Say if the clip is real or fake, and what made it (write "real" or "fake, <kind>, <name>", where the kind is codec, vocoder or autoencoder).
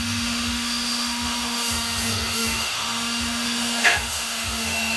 fake, autoencoder, DAC-VAE